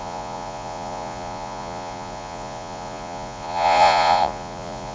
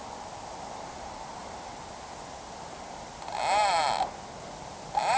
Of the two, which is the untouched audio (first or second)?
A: second